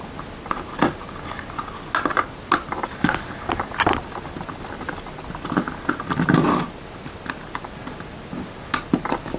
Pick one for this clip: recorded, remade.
recorded